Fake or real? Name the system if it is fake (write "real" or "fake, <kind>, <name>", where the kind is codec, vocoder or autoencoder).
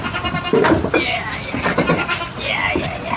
real